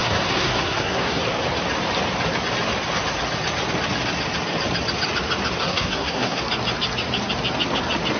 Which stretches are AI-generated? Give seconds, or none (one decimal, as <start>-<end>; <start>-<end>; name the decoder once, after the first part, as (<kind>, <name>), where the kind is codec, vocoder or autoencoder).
0.0-1.2 (codec, SNAC); 5.6-6.4

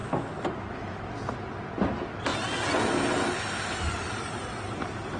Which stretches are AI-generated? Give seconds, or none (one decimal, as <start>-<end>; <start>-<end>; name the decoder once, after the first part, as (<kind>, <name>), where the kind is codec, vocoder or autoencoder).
none

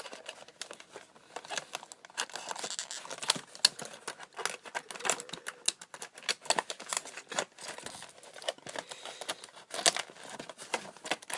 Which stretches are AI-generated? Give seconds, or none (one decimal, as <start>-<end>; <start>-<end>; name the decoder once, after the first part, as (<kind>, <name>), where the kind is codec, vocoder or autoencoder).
none